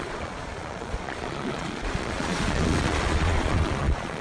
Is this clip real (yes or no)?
no